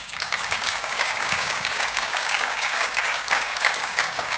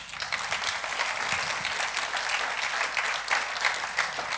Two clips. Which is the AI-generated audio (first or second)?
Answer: first